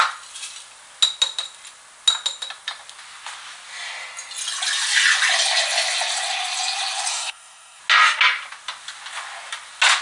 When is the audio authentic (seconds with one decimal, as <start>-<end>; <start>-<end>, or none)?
0.0-7.1; 7.8-10.0